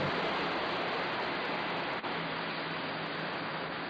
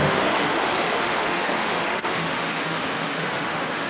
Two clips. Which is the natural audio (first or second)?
first